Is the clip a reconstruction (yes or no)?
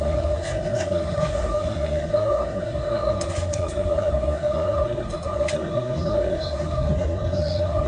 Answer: yes